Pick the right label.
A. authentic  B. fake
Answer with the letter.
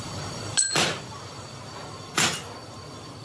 A